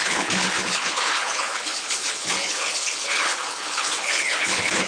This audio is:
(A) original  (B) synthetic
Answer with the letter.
B